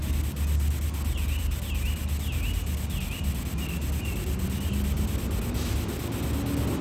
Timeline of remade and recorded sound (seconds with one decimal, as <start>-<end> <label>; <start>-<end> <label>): 0.0-6.8 recorded